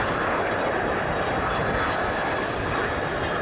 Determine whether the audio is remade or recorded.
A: recorded